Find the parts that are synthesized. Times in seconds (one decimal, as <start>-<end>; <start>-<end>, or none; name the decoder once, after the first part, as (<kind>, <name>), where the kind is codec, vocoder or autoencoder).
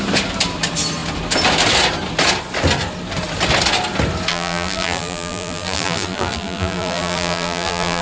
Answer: 4.3-8.0 (vocoder, BigVGAN v2)